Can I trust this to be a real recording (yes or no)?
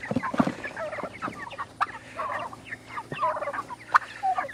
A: yes